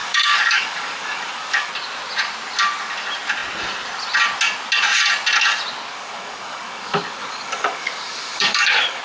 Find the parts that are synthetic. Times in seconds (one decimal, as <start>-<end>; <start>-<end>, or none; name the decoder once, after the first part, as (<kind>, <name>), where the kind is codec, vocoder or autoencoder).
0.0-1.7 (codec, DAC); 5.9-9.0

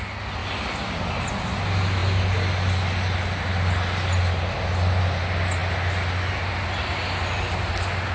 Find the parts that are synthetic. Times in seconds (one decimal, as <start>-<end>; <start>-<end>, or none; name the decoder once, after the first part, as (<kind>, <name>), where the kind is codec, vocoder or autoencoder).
none

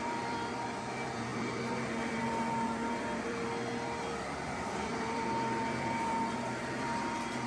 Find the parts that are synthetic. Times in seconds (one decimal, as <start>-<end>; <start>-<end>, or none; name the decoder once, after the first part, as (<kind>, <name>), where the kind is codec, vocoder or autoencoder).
0.0-7.5 (vocoder, BigVGAN v2)

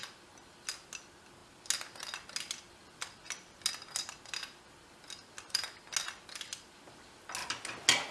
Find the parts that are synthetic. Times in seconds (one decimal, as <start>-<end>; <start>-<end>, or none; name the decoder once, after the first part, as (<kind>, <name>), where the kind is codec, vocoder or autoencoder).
none

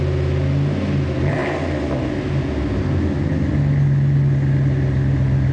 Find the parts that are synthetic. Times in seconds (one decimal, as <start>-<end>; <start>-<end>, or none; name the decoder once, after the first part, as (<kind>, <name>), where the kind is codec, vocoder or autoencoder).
none

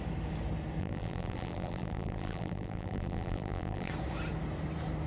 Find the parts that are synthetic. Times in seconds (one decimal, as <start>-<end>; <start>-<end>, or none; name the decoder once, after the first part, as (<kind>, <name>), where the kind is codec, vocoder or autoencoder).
0.8-3.9 (vocoder, BigVGAN v2)

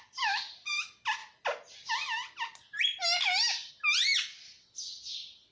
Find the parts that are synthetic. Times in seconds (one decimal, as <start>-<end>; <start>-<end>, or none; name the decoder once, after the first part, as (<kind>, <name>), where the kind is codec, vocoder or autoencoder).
none